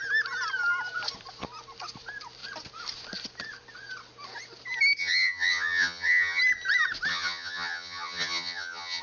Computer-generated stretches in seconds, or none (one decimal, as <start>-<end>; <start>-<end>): 5.0-6.4; 7.1-9.0